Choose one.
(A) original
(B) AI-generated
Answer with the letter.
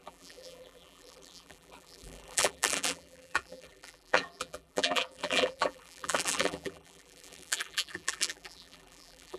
B